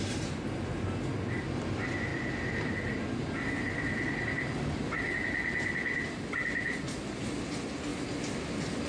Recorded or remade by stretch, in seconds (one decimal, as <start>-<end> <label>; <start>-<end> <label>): 0.0-8.9 recorded